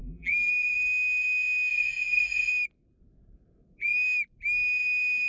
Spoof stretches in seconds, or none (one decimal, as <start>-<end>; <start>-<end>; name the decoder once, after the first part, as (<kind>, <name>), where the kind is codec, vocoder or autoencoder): 0.0-0.5 (vocoder, BigVGAN v2); 1.7-2.5